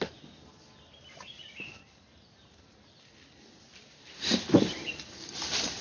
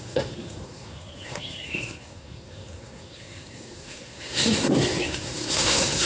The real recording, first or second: first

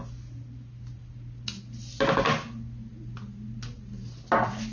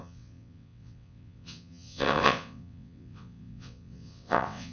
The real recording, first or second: first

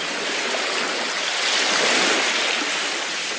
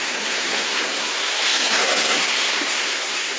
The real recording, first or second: first